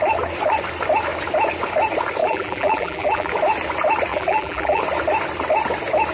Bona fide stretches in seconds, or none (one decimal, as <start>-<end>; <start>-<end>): 0.0-2.2; 3.3-4.1; 4.8-6.1